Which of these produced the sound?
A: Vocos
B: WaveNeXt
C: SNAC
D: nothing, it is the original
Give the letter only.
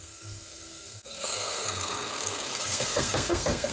C